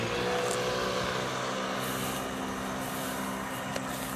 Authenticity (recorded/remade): recorded